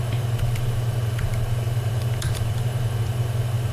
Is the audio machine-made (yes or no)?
yes